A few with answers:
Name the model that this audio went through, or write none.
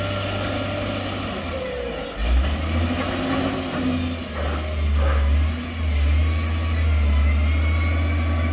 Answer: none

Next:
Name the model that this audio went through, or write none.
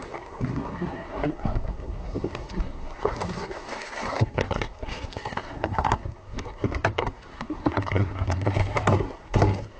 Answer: codec, SNAC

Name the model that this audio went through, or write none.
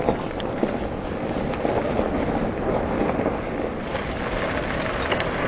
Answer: none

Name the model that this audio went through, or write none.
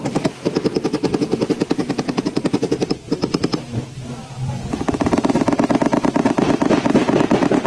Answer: none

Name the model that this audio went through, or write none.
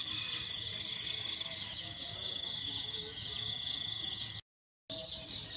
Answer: none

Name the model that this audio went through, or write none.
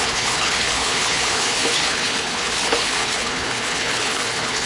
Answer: codec, HILCodec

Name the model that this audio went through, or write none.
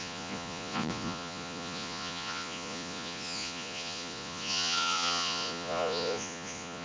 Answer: vocoder, Vocos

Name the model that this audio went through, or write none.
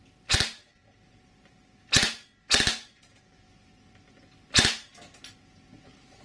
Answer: none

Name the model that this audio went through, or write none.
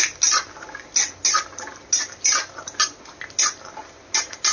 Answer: none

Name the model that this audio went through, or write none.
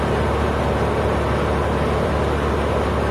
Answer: none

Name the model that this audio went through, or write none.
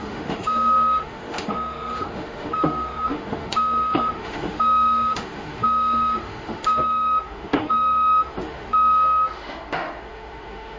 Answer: autoencoder, DAC-VAE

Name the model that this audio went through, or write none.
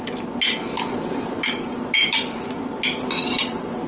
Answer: none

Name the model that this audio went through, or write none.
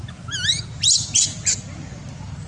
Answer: none